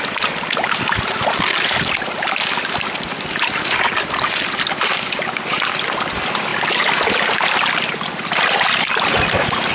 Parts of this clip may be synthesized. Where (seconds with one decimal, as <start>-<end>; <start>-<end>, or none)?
none